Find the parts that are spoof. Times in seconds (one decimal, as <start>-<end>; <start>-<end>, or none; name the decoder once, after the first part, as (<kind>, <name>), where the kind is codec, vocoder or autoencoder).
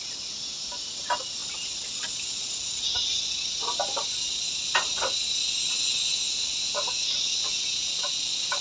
none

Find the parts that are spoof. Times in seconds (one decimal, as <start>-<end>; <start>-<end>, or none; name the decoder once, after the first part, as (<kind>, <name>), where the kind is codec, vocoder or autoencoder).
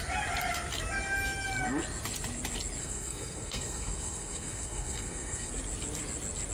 2.8-5.5 (codec, SNAC)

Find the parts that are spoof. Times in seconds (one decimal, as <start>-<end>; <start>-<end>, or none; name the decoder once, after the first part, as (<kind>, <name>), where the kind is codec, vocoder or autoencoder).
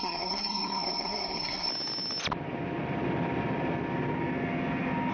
0.0-1.7 (codec, SNAC)